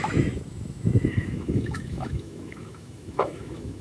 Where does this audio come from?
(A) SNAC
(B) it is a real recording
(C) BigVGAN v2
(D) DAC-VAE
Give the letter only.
D